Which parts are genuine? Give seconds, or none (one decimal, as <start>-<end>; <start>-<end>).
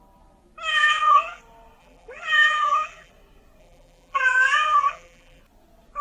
0.0-0.7; 1.4-1.8; 3.1-3.6; 5.4-6.0